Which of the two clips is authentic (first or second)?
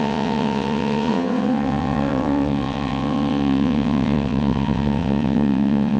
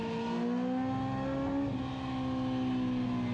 second